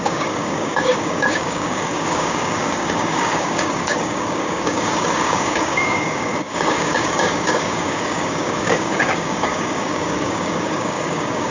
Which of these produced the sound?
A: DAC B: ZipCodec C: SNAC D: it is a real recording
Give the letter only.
A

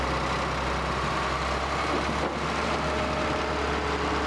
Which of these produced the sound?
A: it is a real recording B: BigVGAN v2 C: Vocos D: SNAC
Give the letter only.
A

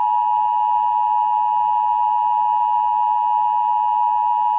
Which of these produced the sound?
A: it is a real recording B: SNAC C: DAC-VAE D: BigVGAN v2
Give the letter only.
C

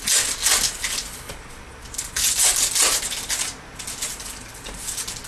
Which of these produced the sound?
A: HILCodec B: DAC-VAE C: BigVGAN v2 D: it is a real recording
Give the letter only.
D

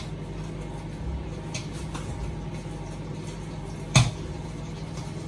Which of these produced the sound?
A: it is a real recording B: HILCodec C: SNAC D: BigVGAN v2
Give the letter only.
A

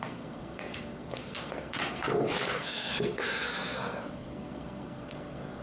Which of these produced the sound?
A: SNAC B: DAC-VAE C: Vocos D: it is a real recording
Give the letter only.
A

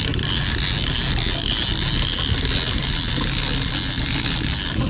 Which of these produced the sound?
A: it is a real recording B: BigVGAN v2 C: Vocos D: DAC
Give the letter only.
A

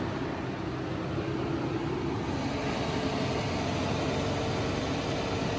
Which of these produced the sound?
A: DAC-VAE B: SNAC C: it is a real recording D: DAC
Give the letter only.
C